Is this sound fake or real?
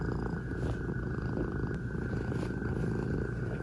real